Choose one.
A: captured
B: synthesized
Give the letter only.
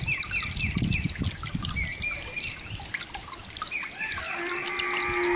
A